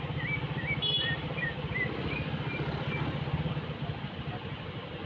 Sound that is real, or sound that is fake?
real